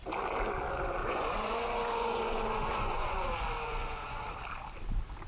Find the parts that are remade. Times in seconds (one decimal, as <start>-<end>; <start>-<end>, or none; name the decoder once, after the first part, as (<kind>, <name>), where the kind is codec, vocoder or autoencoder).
1.0-4.2 (vocoder, Vocos)